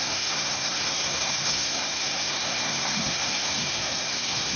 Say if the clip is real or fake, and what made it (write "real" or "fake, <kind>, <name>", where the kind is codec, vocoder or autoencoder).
fake, codec, SNAC